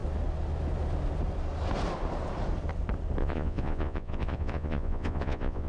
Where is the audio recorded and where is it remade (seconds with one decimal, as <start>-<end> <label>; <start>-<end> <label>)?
0.0-3.2 recorded; 3.2-5.7 remade